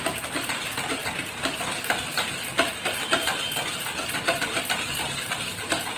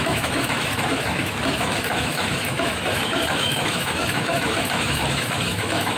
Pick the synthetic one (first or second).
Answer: second